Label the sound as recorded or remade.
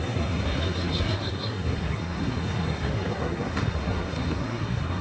remade